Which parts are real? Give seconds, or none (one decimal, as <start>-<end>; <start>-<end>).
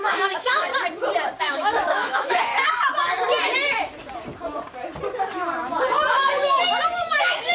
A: 0.7-1.4; 2.5-6.1